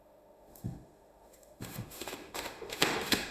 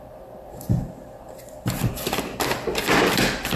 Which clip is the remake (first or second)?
first